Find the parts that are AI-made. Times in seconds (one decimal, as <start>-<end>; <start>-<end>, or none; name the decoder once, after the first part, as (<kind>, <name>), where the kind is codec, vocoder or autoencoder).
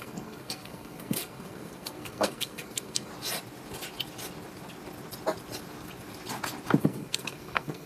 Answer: 0.0-3.1 (codec, SNAC); 6.8-7.9